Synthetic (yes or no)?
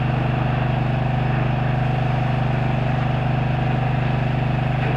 no